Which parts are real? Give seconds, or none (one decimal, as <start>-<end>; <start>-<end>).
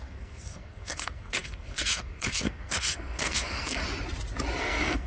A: 3.8-4.6